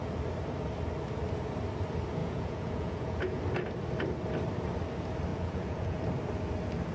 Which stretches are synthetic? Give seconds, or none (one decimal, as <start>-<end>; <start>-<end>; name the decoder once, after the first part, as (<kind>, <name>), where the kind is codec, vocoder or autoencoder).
2.2-3.4 (vocoder, Vocos); 5.3-6.0